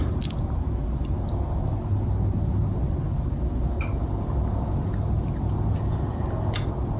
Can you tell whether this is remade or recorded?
recorded